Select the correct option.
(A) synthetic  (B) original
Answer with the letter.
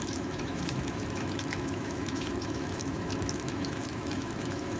A